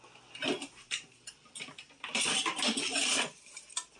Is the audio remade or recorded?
recorded